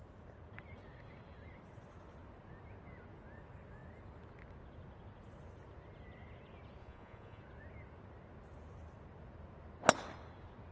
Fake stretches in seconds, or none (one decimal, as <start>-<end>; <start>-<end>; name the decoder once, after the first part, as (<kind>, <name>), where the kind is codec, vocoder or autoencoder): 6.8-7.4 (vocoder, Vocos)